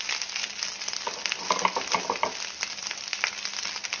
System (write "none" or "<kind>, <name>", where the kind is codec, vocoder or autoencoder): none